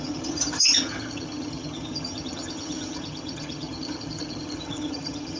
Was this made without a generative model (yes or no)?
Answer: no